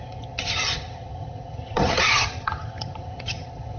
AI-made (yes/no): yes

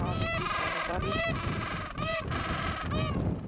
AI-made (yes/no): yes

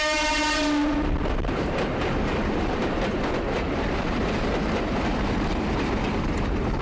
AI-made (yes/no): yes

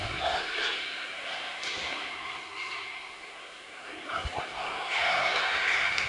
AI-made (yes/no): yes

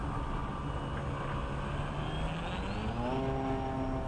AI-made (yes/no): no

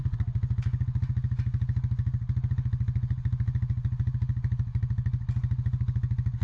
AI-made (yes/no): no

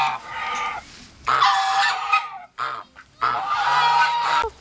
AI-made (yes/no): no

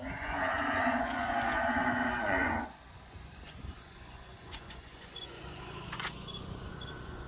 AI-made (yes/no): yes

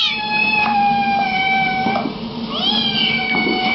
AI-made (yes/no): no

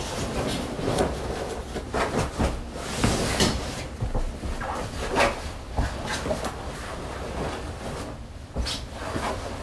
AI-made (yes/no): no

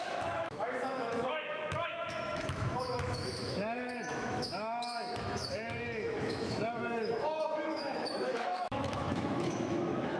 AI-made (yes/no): yes